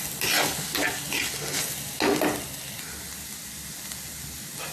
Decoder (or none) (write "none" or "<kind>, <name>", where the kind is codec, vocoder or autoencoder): none